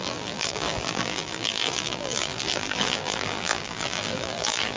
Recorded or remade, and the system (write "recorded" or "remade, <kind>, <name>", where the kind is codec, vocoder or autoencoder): remade, vocoder, BigVGAN v2